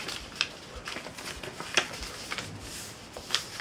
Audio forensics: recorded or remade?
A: recorded